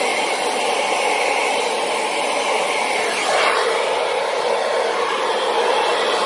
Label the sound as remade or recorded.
recorded